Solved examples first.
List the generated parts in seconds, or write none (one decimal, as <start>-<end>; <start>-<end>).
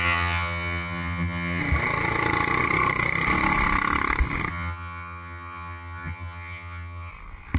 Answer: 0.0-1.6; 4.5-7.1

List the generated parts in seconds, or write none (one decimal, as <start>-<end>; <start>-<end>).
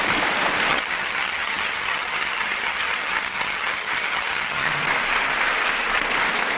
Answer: 0.7-4.7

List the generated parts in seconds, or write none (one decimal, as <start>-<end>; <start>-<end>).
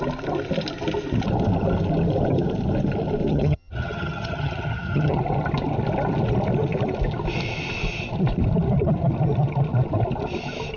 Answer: 3.3-5.2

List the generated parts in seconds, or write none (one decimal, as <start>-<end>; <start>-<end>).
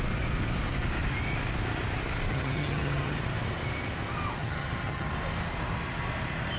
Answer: 2.3-3.2; 4.4-5.1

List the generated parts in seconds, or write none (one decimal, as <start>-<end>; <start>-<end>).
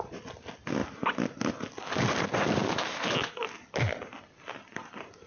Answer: none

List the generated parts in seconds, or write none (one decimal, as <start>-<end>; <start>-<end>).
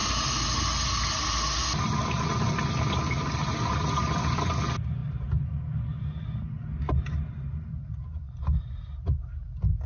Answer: none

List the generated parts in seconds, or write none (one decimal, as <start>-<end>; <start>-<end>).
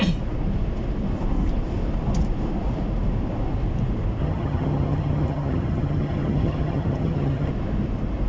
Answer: 4.2-7.5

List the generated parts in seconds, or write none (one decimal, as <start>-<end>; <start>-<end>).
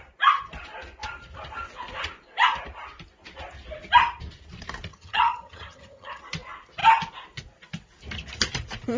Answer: 4.9-6.2